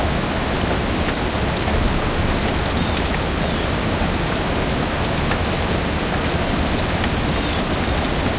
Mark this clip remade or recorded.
recorded